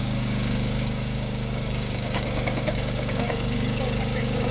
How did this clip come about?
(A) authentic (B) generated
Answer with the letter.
B